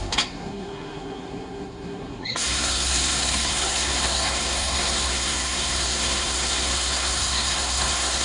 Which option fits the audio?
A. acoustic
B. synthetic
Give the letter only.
B